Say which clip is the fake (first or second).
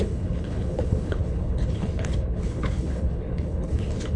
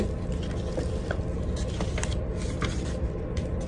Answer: first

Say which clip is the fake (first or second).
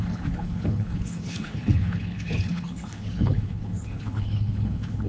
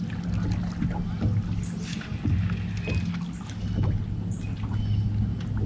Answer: first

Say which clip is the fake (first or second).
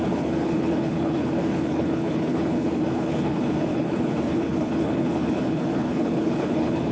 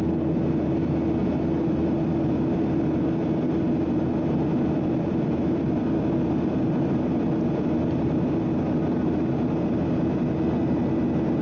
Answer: first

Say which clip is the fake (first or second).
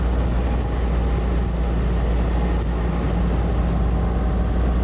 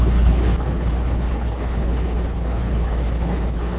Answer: second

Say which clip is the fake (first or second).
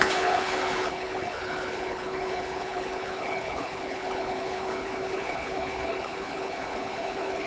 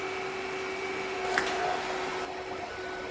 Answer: first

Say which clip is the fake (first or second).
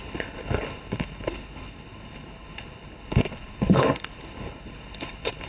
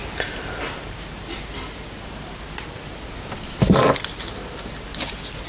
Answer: first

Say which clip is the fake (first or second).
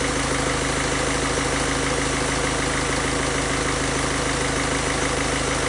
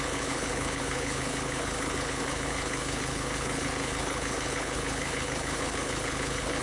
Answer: second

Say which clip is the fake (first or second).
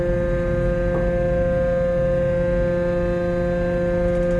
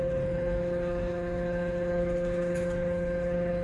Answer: second